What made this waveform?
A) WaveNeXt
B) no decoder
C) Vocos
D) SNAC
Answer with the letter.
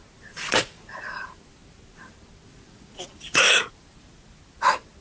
B